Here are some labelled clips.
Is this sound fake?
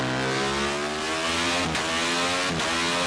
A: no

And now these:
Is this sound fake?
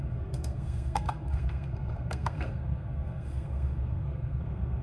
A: yes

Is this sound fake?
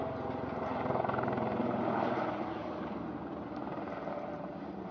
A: no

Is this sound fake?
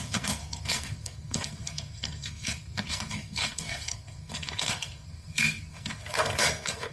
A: yes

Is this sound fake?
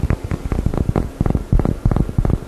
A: no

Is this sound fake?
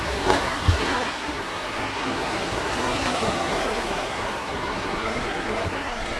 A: yes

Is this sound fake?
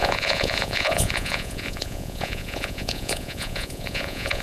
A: yes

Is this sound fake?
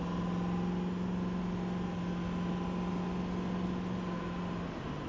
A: no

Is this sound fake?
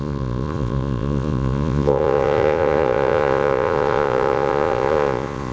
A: yes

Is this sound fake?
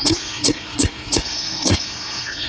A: yes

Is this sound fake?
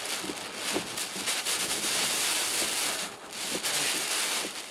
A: no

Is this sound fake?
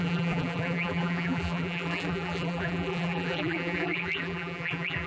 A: yes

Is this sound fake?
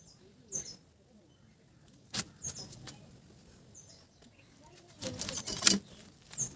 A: no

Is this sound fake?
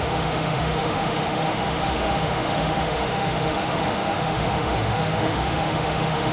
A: yes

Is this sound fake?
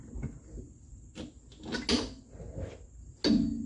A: no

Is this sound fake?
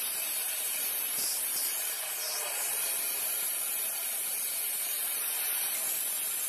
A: yes